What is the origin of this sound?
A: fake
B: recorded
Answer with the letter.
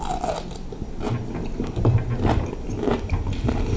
B